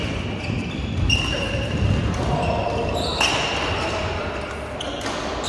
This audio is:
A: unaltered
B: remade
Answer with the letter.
A